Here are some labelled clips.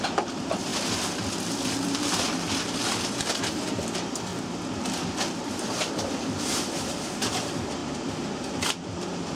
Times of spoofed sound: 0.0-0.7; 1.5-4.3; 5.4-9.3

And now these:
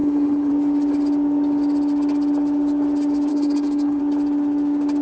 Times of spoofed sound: 0.0-0.5; 3.3-4.0

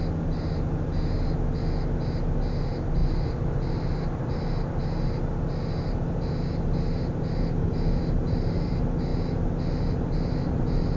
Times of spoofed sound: none